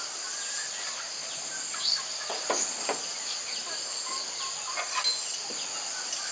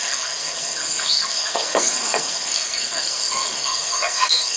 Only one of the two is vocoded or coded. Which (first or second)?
second